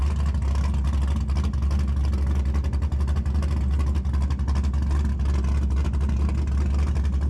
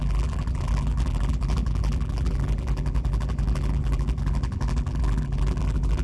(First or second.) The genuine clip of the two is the first